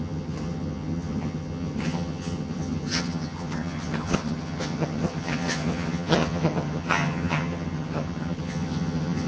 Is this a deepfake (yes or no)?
yes